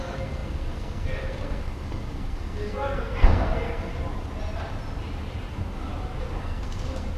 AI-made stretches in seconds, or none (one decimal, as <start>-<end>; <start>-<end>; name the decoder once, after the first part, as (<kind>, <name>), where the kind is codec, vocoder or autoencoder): 0.0-3.9 (codec, SNAC); 5.5-5.9; 6.4-7.2